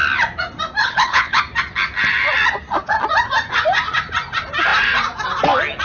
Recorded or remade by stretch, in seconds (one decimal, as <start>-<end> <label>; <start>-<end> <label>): 0.0-0.8 recorded; 0.8-1.4 remade; 1.4-5.8 recorded